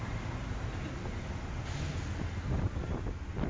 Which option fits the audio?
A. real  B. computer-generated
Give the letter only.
A